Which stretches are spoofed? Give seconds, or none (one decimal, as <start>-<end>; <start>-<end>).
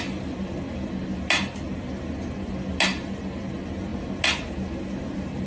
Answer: none